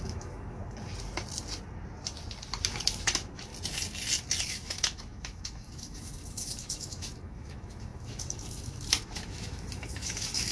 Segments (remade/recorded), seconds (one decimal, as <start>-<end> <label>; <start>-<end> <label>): 0.0-0.6 remade; 0.6-2.7 recorded; 2.7-3.5 remade; 3.5-4.4 recorded; 4.4-10.5 remade